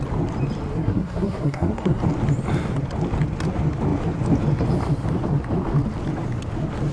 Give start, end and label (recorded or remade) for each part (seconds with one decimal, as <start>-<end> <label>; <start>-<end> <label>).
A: 0.0-0.7 recorded; 0.7-2.0 remade; 2.0-6.9 recorded